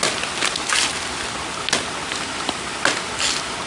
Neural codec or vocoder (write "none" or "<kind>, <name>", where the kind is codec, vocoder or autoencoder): none